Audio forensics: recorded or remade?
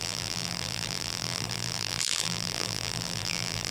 remade